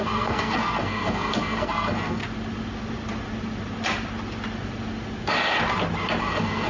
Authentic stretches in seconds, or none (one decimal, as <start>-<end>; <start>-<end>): 2.2-6.2